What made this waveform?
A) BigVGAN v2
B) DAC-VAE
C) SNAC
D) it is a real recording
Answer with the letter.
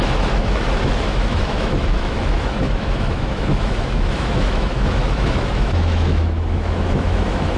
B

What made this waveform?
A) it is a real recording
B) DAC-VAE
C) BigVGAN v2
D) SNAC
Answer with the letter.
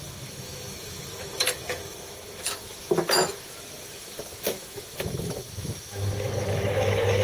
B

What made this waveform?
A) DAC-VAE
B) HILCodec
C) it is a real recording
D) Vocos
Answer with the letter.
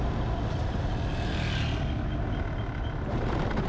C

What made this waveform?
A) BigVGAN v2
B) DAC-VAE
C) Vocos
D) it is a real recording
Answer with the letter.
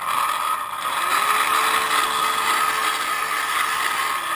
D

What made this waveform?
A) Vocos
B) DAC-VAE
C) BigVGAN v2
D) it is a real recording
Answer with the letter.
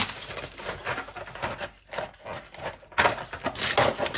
D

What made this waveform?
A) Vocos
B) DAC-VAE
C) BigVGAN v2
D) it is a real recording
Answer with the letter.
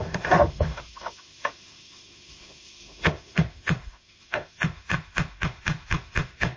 B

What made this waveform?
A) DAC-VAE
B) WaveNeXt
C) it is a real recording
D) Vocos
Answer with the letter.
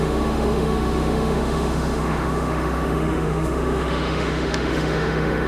A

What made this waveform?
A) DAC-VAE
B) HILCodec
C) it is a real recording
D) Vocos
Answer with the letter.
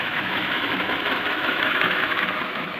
A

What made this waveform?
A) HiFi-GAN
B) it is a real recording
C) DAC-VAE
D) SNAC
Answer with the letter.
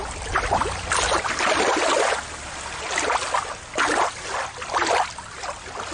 B